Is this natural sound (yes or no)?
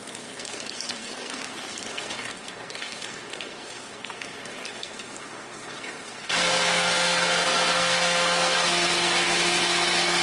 no